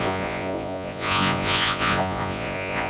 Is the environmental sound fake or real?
fake